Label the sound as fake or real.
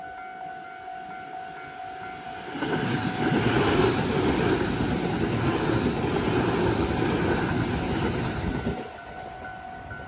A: real